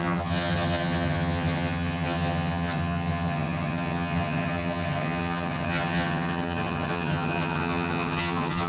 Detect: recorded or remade remade